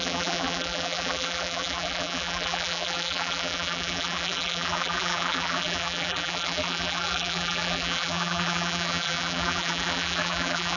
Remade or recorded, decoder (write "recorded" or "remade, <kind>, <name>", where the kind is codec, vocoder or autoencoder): remade, vocoder, BigVGAN v2